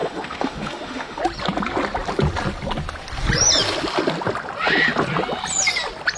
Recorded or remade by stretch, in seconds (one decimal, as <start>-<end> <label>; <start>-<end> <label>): 0.0-1.2 remade; 1.2-6.2 recorded